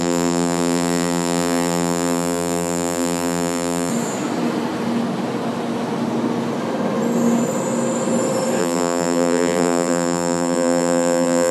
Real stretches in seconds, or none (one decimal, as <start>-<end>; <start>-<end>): 3.9-8.6